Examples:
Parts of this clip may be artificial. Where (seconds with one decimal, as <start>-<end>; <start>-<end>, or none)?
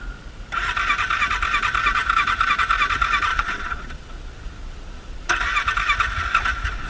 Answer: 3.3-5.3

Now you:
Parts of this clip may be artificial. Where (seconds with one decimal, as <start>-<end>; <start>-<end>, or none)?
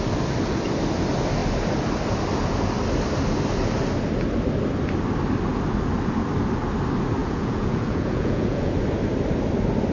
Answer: 7.2-8.7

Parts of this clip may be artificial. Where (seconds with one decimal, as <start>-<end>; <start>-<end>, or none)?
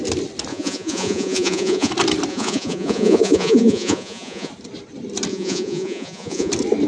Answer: 0.5-1.9; 2.3-4.5; 5.3-6.5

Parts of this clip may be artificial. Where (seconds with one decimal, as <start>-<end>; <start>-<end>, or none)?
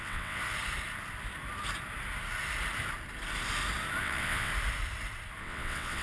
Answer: 0.0-0.4; 4.0-4.5; 5.4-6.0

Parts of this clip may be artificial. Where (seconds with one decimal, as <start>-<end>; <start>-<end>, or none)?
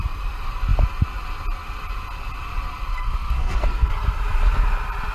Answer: 2.9-3.9